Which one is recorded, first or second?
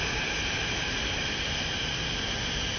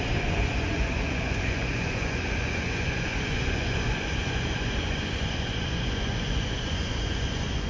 first